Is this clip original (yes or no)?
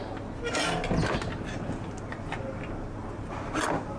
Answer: yes